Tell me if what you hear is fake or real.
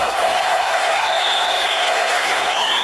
fake